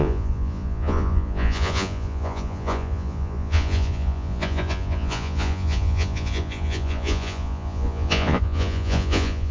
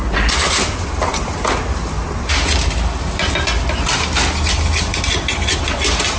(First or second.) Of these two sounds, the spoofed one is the first